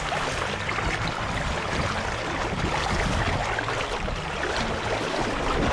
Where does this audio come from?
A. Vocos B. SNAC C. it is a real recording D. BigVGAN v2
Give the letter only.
C